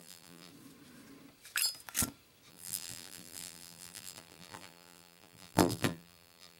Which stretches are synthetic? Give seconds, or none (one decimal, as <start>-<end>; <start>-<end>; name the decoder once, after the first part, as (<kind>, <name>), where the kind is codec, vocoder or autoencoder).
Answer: 0.0-0.5 (vocoder, BigVGAN v2); 2.5-6.6